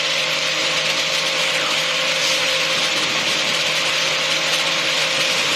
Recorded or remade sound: remade